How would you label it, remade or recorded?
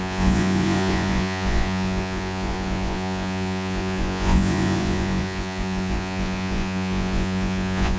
remade